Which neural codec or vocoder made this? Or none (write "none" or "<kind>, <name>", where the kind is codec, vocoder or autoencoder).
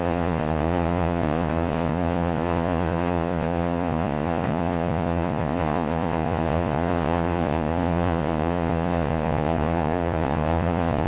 vocoder, Vocos